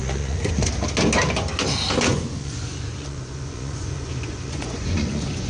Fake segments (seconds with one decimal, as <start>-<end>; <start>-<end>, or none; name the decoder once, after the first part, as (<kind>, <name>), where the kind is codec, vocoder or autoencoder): 0.0-0.7 (vocoder, Vocos); 2.1-5.5